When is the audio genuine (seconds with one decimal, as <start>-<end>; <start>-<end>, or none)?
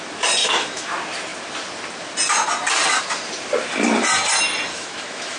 0.0-0.4; 0.9-4.7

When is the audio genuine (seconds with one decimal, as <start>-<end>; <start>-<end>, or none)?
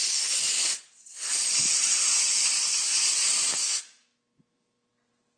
0.0-3.6; 4.9-5.4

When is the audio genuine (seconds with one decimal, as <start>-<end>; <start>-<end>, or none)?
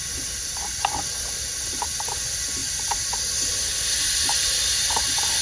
0.0-5.4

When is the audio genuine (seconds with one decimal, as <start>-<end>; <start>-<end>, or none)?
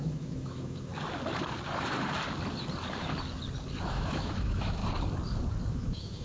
0.9-3.8; 4.8-5.7